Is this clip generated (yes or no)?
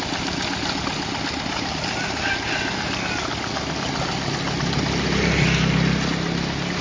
no